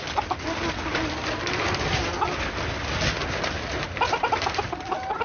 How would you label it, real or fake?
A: real